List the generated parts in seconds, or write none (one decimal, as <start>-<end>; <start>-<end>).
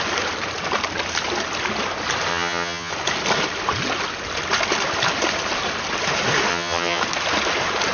2.3-2.9; 6.5-7.0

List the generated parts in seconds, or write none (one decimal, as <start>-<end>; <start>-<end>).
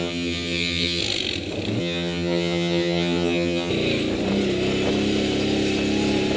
0.0-1.0; 1.8-3.7